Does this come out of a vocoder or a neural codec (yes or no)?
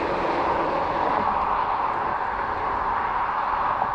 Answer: no